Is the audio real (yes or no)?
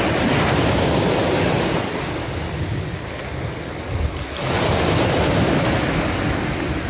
yes